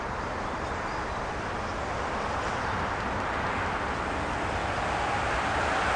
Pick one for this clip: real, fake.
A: real